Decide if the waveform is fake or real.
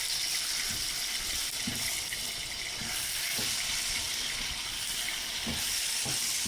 real